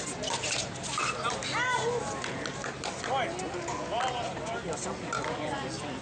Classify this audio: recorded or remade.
recorded